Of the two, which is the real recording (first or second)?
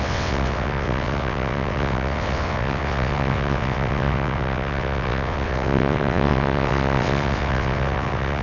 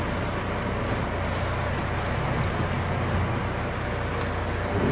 second